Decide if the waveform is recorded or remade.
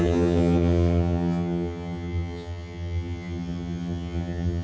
remade